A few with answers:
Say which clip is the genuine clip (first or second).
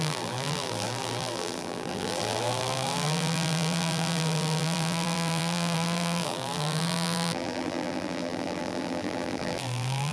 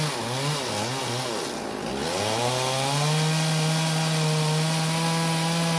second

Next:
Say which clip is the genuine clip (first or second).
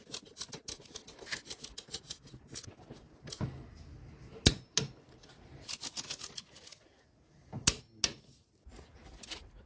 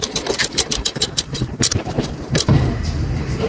first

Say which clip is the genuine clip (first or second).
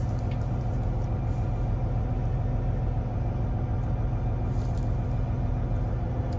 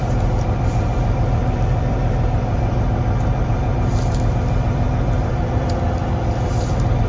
first